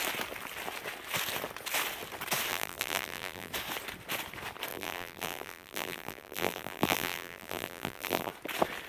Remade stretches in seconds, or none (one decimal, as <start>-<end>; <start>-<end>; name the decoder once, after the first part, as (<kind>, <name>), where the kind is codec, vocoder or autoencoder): 2.5-3.5 (vocoder, BigVGAN v2); 4.7-8.3